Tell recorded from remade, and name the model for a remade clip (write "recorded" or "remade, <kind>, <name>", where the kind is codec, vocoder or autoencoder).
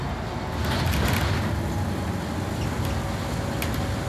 recorded